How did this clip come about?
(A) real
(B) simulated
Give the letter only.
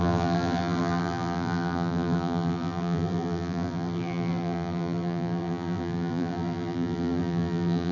B